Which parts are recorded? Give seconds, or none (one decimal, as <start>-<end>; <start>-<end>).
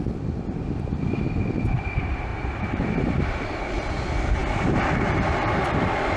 0.0-2.3; 3.7-6.2